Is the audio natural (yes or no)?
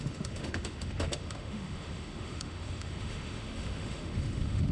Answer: no